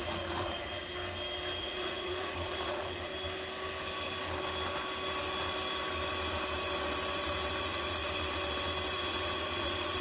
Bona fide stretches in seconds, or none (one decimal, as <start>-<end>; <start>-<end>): 0.8-1.6; 3.1-7.6; 8.0-8.9